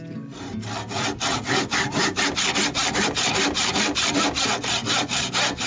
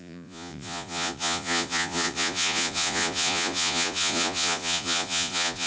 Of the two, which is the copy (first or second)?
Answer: second